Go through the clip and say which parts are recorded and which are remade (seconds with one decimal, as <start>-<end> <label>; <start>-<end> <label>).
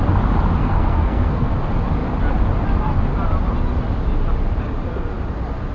0.0-0.6 recorded; 0.6-1.5 remade; 1.5-5.7 recorded